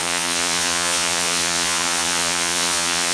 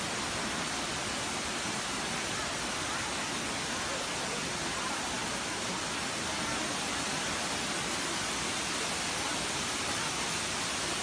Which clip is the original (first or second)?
second